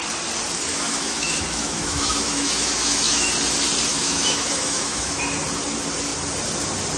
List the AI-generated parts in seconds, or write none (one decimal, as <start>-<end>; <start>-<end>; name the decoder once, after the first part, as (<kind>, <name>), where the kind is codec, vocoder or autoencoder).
0.7-3.3 (autoencoder, DAC-VAE); 3.9-5.2